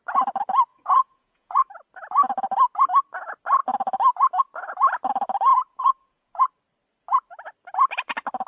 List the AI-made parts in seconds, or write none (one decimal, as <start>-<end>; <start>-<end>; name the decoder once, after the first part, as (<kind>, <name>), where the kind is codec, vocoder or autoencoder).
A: 0.7-1.7 (vocoder, Vocos); 5.5-6.5